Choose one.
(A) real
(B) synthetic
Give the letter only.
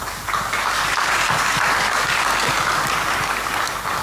B